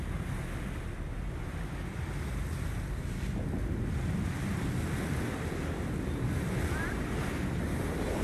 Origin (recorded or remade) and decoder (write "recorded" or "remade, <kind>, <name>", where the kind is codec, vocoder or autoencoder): recorded